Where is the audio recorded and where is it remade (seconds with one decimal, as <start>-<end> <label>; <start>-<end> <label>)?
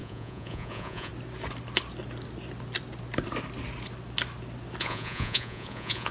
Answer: 0.0-1.1 remade; 1.1-4.8 recorded; 4.8-6.1 remade